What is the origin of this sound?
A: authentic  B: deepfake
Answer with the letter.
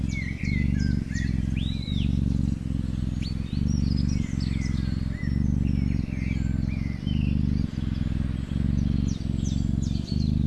A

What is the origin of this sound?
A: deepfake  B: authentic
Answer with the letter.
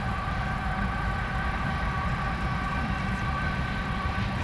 A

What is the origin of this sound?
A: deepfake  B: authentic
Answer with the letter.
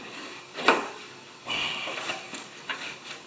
A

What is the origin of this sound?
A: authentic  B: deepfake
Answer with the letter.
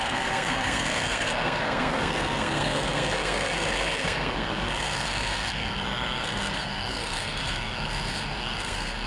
B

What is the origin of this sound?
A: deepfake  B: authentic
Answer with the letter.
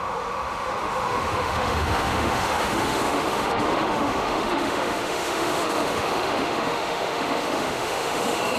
A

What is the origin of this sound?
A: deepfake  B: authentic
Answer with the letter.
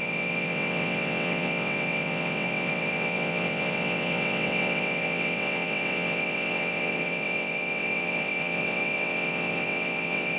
A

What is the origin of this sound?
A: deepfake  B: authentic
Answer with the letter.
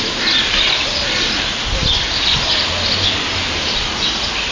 B